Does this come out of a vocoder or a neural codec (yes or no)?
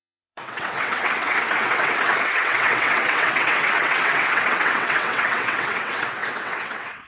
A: yes